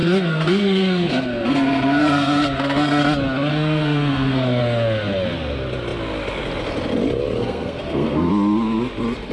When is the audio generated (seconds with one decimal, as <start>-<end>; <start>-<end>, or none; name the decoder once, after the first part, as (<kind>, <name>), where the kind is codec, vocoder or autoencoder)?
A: 0.0-3.0 (codec, SNAC); 3.5-4.6; 7.4-8.3